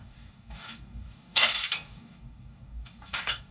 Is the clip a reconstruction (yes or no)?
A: yes